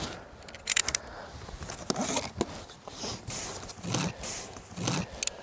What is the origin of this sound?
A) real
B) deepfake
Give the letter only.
A